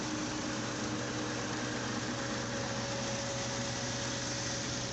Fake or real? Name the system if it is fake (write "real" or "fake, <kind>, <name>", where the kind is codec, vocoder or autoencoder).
real